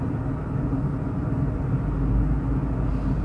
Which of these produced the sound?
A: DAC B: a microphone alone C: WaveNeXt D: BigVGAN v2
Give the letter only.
B